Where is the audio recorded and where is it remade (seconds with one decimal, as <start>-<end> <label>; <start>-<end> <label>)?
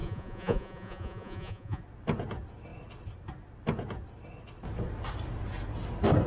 0.0-1.8 remade; 1.8-6.3 recorded